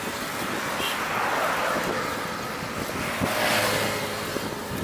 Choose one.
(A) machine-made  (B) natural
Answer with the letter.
B